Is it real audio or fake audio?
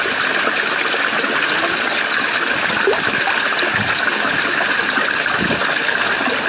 real